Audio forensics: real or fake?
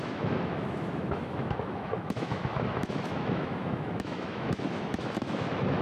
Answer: fake